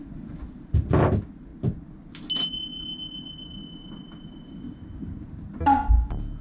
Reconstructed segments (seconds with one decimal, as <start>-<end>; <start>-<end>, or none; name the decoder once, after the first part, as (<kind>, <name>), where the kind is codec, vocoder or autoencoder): none